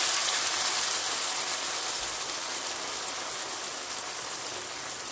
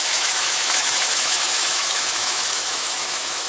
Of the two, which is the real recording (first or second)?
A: first